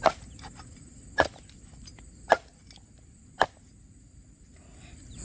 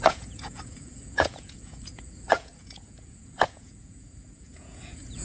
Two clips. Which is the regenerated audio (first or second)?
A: second